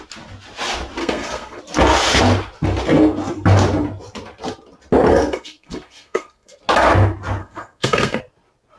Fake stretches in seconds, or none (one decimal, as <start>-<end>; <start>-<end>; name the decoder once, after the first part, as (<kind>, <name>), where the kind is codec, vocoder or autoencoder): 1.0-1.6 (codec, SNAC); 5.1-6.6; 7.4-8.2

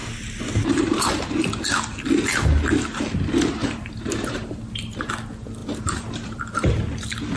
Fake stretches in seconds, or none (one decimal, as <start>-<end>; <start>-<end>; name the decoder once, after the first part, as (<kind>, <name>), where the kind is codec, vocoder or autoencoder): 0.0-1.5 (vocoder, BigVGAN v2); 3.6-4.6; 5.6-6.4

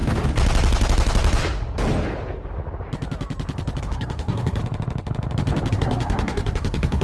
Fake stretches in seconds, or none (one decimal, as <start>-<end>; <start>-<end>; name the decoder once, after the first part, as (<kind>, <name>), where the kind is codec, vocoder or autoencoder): 3.8-4.6 (codec, SNAC); 5.7-7.0

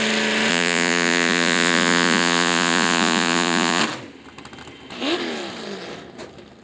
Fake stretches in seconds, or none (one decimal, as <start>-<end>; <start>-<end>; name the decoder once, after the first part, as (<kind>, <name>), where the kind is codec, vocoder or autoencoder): 0.5-3.8 (vocoder, Vocos)

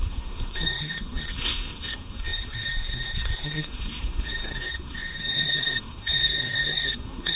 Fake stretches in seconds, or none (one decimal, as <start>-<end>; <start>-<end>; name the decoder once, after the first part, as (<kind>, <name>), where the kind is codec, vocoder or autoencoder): 0.0-7.4 (codec, SNAC)

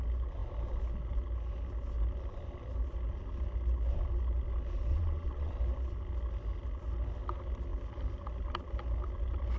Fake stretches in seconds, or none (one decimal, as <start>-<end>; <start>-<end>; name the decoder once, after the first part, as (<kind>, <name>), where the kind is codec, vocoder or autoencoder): 4.9-5.6 (vocoder, Vocos)